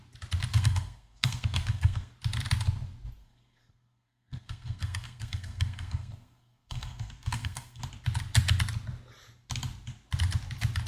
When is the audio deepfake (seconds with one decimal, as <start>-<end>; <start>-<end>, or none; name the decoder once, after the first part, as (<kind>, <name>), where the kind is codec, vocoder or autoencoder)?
0.5-2.1 (codec, SNAC); 3.2-7.8

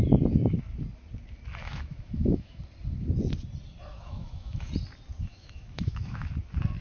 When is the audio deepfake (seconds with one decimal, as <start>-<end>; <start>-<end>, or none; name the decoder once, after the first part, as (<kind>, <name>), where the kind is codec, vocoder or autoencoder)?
1.6-2.6 (autoencoder, DAC-VAE); 3.9-4.7; 5.3-6.3

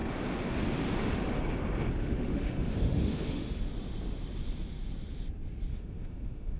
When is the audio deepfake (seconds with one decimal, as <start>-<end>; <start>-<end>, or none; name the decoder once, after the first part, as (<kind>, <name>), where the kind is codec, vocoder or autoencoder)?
2.0-3.6 (autoencoder, DAC-VAE); 5.7-6.6

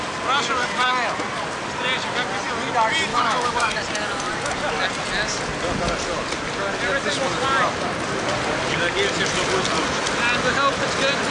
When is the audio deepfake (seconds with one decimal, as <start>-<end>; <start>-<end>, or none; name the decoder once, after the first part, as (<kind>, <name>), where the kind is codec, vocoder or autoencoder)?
3.1-3.8 (autoencoder, DAC-VAE)